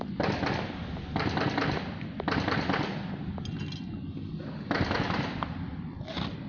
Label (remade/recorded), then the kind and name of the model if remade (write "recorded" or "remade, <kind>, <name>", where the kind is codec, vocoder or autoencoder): recorded